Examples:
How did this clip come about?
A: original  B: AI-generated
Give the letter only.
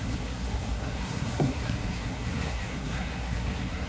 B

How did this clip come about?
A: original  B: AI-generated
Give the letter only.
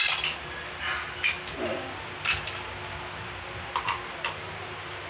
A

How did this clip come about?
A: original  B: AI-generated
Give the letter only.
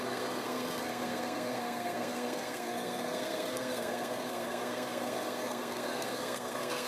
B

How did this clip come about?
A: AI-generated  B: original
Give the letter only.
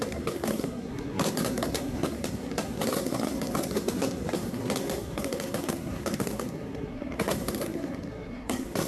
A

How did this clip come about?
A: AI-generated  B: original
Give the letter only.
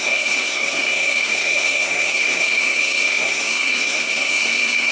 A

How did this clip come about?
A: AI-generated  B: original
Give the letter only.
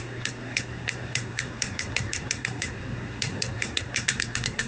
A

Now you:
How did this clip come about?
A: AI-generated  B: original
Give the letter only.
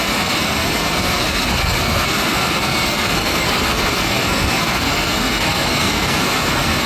A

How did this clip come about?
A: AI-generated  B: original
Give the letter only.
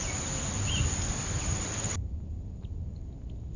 B